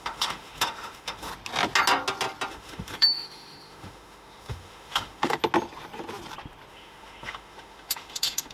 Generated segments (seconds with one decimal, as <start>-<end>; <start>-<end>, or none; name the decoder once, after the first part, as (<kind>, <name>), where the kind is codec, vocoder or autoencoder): 0.0-1.3 (autoencoder, DAC-VAE); 2.5-5.4; 6.7-8.5